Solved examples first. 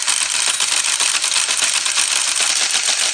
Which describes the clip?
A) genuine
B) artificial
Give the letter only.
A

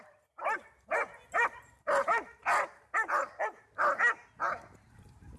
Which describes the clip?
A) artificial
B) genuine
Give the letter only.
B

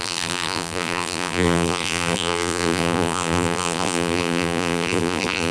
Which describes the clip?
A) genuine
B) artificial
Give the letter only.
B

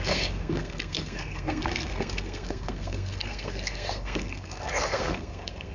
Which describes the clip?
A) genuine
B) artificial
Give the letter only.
B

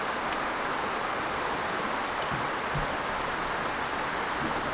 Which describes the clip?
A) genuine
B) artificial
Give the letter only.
A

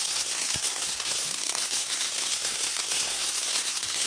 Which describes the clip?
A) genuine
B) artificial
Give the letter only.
B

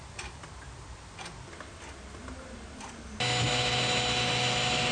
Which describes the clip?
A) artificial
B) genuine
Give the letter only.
B